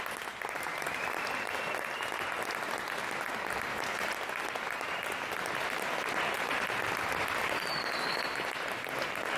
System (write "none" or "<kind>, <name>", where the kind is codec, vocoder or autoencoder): none